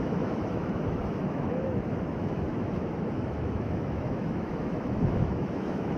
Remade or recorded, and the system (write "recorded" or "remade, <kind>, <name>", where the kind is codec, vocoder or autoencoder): remade, autoencoder, DAC-VAE